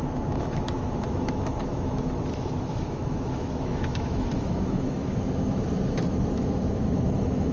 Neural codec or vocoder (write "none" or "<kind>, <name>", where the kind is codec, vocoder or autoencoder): autoencoder, DAC-VAE